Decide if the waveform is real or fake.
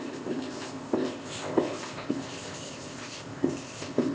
fake